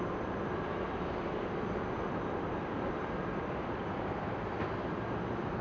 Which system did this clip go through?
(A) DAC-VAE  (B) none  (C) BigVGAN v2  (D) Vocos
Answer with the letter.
B